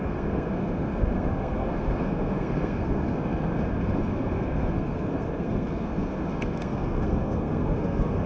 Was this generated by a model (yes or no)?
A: yes